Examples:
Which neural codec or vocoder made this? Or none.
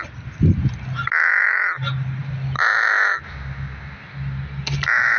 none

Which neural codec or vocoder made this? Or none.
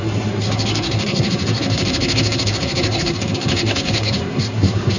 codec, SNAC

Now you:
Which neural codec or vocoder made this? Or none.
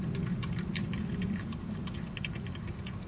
none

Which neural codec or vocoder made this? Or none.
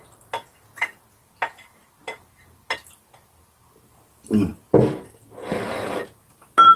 none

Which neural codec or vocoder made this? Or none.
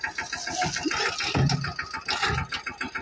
none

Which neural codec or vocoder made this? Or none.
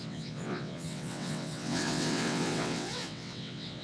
vocoder, WaveNeXt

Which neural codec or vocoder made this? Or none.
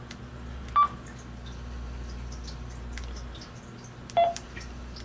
none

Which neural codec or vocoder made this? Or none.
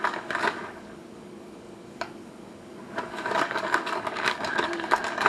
codec, DAC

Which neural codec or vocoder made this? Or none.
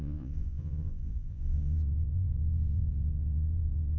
vocoder, Vocos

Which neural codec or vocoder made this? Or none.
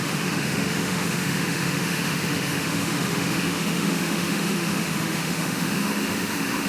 autoencoder, DAC-VAE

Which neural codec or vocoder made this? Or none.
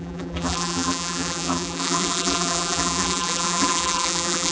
vocoder, BigVGAN v2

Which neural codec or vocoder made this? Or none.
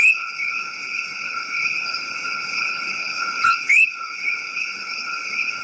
codec, HILCodec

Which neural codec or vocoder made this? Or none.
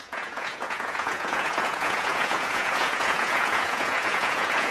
vocoder, Vocos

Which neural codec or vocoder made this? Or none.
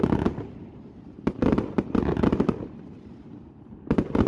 none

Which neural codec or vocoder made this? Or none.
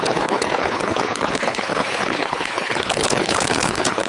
codec, HILCodec